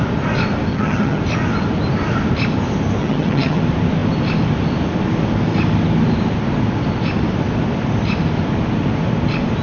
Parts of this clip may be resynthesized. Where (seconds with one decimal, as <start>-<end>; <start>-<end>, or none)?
0.7-1.2; 3.0-3.6